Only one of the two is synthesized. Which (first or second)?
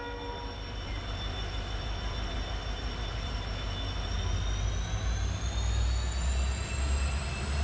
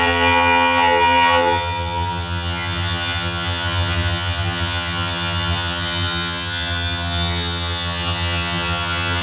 second